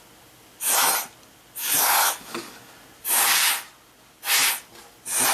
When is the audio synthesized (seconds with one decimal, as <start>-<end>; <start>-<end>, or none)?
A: 1.6-2.7